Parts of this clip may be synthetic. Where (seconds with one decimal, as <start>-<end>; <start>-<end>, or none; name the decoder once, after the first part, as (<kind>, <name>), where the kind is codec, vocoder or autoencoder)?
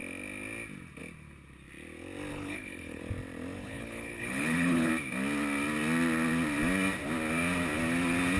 2.3-3.0 (codec, HILCodec); 3.6-4.9